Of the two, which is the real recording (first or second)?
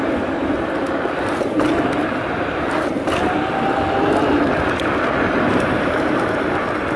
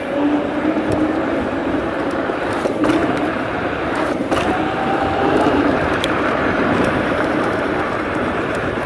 first